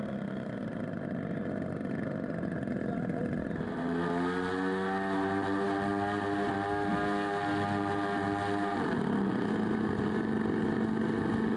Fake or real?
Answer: real